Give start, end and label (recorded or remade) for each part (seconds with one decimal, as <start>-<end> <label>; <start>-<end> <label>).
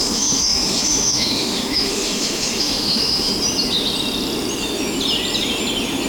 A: 0.0-3.3 remade; 3.3-6.1 recorded